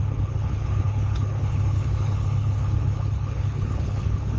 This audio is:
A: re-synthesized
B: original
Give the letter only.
A